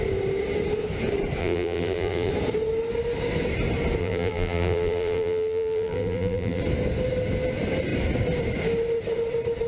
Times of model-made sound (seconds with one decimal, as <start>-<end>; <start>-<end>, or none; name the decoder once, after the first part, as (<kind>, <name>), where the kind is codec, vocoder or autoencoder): 1.4-2.3 (vocoder, BigVGAN v2); 4.0-6.6